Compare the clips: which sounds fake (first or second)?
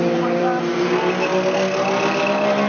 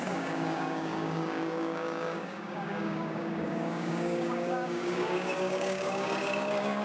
second